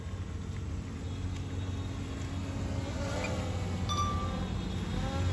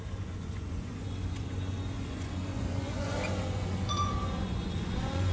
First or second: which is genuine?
first